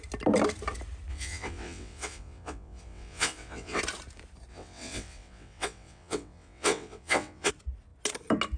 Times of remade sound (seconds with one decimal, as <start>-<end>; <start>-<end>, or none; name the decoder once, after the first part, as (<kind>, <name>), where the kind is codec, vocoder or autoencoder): 1.1-3.8 (vocoder, WaveNeXt); 4.5-7.5